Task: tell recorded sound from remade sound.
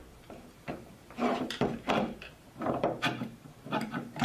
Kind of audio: remade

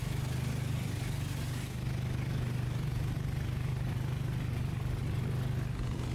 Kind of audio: recorded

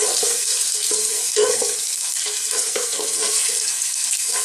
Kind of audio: remade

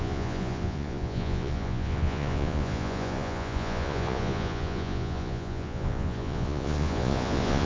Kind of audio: remade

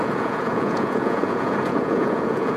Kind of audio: remade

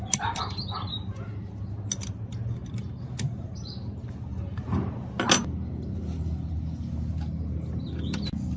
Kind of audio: recorded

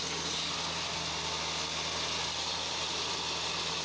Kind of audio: recorded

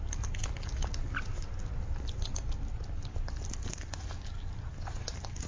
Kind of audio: recorded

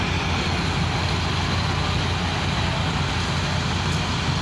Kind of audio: recorded